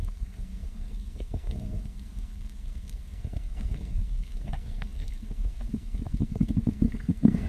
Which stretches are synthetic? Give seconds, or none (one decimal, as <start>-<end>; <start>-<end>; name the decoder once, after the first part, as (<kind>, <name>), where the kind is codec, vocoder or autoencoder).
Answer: 0.0-7.5 (codec, SNAC)